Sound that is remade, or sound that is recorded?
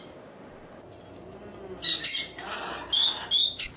recorded